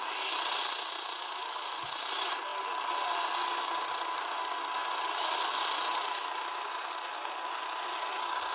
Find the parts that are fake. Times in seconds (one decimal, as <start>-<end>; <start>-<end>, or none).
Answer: none